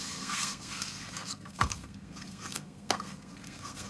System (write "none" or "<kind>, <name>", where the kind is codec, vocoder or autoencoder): codec, SNAC